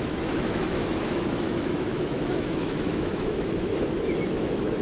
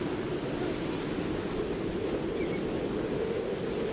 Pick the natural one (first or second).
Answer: second